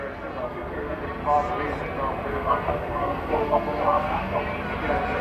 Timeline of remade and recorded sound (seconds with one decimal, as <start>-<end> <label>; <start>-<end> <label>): 0.0-0.4 recorded; 0.4-1.0 remade; 1.0-2.3 recorded; 2.3-4.4 remade; 4.4-5.2 recorded